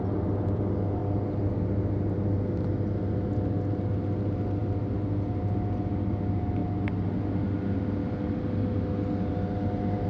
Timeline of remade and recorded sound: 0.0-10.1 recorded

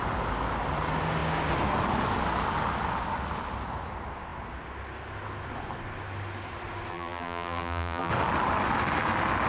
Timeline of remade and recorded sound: 0.0-6.9 recorded; 6.9-8.1 remade; 8.1-9.5 recorded